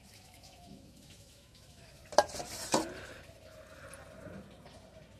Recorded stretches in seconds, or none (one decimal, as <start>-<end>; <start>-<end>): 2.0-5.2